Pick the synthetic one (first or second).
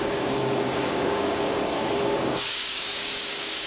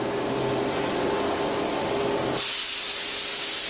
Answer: first